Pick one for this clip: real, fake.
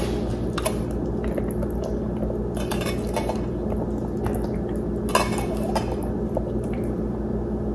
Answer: real